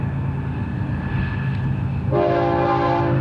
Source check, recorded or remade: recorded